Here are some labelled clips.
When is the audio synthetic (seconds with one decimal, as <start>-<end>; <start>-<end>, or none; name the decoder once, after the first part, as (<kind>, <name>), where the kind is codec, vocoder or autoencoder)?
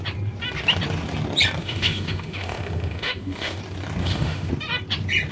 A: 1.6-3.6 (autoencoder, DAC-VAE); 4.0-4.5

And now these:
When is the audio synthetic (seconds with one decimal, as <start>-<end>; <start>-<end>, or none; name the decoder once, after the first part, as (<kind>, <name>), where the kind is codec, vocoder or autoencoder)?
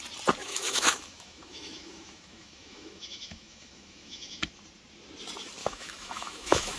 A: 0.4-4.5 (autoencoder, DAC-VAE); 5.6-6.8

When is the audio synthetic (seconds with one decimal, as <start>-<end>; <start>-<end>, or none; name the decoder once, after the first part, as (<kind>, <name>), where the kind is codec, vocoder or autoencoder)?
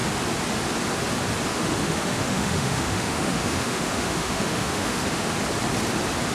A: 1.5-5.3 (autoencoder, DAC-VAE)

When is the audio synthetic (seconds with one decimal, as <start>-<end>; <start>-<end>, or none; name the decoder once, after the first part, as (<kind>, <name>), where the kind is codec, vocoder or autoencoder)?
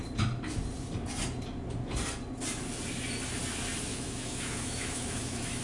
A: 3.9-5.6 (autoencoder, DAC-VAE)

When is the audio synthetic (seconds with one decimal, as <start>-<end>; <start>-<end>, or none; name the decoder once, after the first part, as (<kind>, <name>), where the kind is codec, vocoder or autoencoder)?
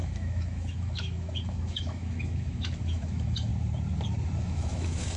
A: 0.0-3.5 (autoencoder, DAC-VAE); 4.4-5.2